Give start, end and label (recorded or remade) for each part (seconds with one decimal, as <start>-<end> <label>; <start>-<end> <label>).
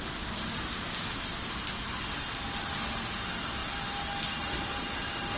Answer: 0.0-5.4 recorded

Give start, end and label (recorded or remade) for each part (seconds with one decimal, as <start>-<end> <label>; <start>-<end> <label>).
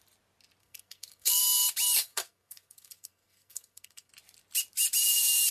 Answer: 0.0-0.6 recorded; 0.6-1.4 remade; 1.4-2.0 recorded; 2.0-4.1 remade; 4.1-5.5 recorded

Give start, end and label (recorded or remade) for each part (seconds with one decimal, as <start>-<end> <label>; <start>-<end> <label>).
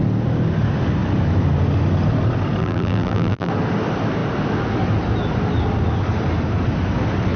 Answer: 0.0-2.6 recorded; 2.6-3.5 remade; 3.5-7.4 recorded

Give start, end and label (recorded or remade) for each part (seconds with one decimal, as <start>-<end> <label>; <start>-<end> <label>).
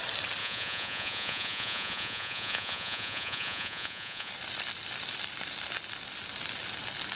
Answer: 0.0-0.4 recorded; 0.4-4.3 remade; 4.3-7.2 recorded